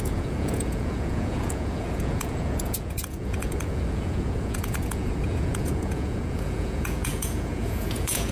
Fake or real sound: fake